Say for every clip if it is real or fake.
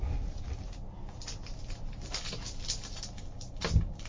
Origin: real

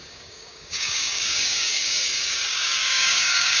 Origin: fake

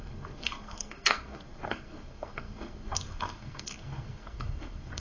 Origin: fake